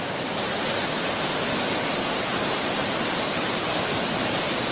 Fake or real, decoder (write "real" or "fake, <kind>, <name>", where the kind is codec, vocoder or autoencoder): real